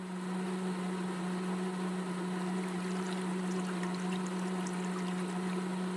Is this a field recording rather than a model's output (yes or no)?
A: yes